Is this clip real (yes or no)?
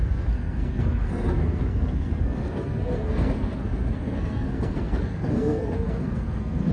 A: no